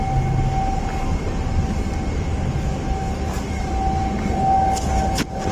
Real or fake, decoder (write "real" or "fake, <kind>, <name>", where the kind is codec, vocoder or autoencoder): real